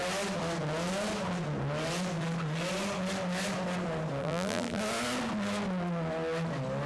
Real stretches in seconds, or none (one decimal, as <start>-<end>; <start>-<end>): 0.0-4.2; 4.8-6.9